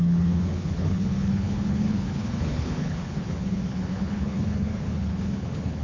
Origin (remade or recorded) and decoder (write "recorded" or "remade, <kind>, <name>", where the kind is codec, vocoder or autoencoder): remade, codec, HILCodec